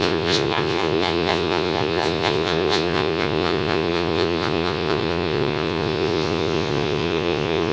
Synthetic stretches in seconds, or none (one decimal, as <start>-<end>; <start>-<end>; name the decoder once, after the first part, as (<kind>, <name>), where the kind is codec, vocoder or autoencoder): 0.0-7.7 (vocoder, Vocos)